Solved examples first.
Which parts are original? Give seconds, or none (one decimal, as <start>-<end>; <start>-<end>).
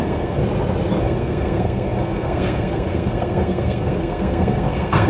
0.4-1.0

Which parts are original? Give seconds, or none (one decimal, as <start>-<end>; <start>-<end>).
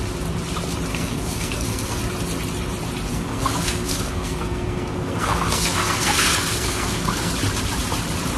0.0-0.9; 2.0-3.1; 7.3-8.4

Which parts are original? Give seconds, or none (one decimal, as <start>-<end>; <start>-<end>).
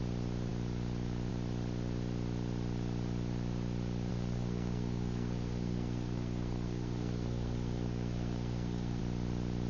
0.0-4.1; 9.0-9.7